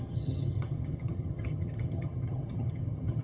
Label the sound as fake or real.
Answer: fake